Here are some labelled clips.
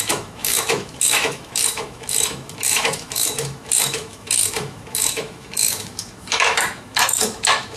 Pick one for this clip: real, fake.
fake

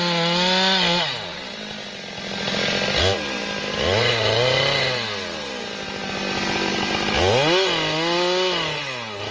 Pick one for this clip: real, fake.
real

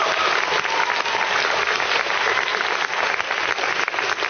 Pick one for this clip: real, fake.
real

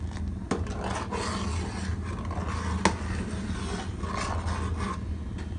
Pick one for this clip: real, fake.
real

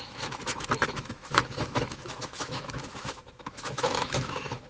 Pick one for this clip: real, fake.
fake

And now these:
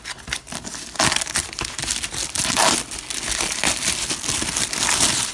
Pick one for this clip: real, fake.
real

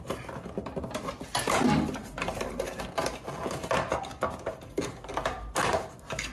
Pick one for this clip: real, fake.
real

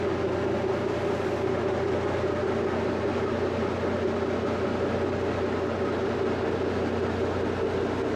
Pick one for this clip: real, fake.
real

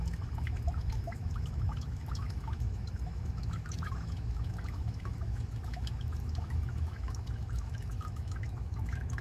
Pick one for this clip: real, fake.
fake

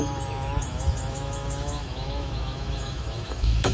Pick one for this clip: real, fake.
fake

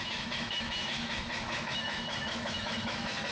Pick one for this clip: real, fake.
fake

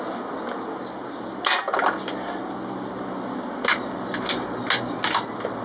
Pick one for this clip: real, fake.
real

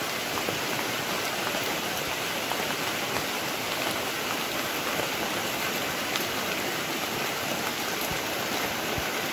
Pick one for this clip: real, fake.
real